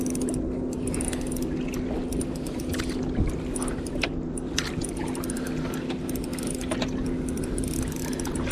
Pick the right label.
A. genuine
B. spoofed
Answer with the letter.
A